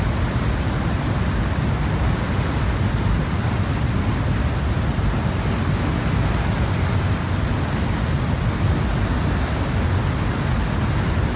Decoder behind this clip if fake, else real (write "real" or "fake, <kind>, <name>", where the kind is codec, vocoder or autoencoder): real